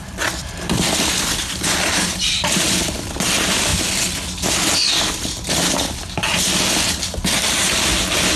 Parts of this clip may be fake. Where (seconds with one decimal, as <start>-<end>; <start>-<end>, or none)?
none